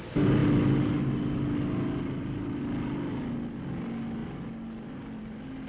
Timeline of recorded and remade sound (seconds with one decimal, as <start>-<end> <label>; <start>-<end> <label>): 0.0-5.7 recorded

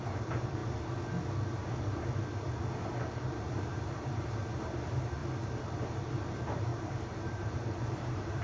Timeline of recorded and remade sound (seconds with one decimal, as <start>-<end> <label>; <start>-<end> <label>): 0.0-0.6 remade; 0.6-2.9 recorded; 2.9-5.2 remade; 5.2-5.8 recorded; 5.8-8.4 remade

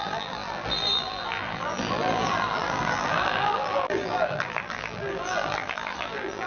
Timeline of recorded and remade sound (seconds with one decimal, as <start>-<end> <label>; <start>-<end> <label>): 0.0-6.5 remade

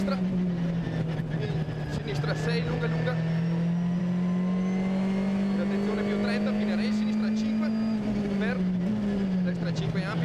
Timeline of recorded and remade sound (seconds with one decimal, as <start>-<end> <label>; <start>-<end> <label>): 0.0-10.2 recorded